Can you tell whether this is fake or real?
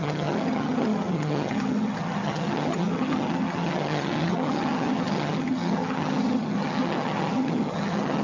fake